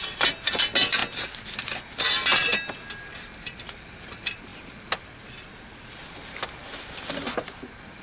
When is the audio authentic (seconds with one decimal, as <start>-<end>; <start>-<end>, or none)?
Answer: 0.0-8.0